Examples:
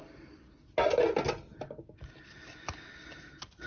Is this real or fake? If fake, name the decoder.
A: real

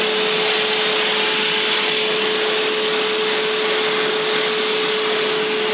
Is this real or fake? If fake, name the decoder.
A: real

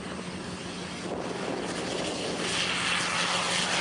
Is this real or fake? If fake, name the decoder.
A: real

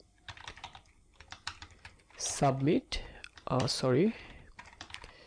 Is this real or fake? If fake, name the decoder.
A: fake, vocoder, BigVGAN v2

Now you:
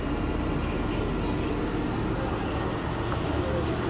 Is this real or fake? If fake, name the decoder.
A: real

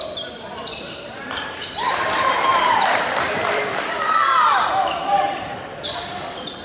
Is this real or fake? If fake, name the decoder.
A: fake, vocoder, BigVGAN v2